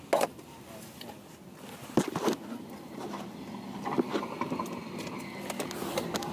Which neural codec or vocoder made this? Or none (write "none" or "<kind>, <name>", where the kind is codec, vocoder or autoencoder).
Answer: none